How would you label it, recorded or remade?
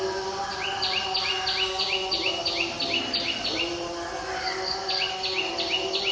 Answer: recorded